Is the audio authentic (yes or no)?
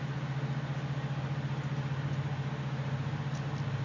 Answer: yes